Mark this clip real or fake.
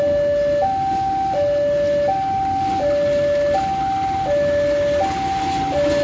real